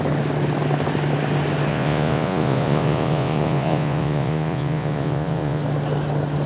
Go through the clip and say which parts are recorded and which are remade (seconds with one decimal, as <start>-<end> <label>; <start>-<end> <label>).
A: 0.0-1.7 recorded; 1.7-5.6 remade; 5.6-6.5 recorded